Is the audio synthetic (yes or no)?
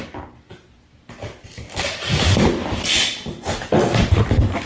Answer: no